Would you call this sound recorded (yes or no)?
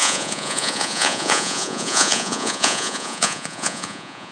no